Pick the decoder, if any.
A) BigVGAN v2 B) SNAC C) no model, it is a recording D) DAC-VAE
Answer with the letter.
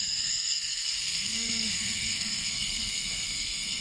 B